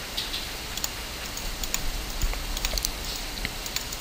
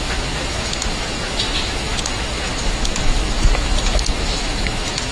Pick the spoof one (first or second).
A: second